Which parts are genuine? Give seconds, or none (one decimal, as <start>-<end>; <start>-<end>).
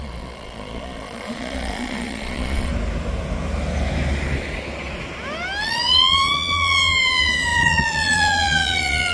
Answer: 2.7-5.6